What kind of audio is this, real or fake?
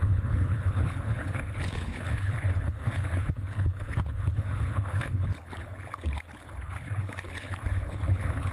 fake